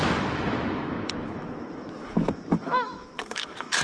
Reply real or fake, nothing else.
fake